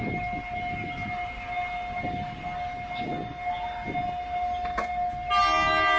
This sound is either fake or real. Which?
real